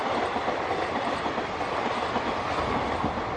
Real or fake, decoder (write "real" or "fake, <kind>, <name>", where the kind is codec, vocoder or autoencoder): real